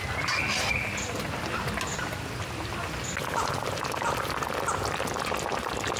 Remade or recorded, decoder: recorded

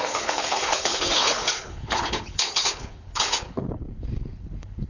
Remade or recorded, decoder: remade, codec, HILCodec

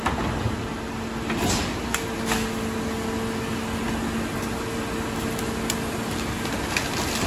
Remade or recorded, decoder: recorded